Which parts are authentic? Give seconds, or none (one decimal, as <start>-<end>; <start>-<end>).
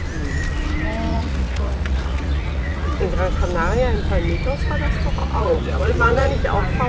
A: 0.0-1.1; 3.0-5.2; 6.3-6.9